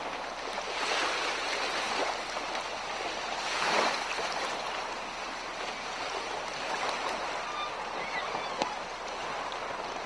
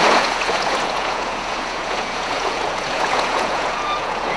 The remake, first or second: second